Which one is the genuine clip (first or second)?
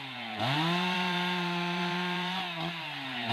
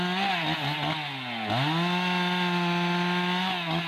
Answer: second